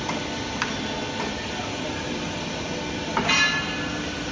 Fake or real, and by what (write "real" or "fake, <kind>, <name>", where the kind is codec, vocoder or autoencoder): real